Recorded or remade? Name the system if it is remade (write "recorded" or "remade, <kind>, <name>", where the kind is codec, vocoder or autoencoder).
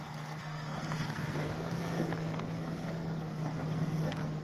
remade, codec, SNAC